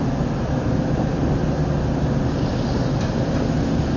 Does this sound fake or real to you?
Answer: real